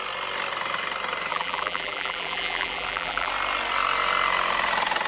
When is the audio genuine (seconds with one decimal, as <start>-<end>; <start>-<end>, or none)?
0.0-1.3; 3.3-5.1